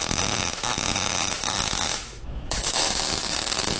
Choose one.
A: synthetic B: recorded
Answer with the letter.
A